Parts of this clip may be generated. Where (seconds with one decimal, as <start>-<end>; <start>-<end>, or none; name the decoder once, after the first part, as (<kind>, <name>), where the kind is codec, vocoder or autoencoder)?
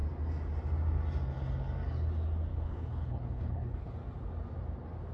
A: 2.5-3.9 (codec, HILCodec)